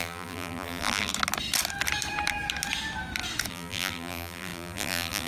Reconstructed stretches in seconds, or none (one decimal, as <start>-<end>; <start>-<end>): 0.0-1.1; 3.5-5.3